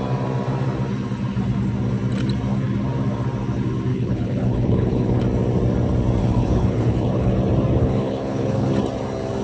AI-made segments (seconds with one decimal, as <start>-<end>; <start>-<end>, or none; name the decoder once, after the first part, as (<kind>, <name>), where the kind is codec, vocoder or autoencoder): 3.9-5.2 (codec, HILCodec); 6.2-7.3; 7.8-8.7